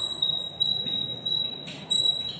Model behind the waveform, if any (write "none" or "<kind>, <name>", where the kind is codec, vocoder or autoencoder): none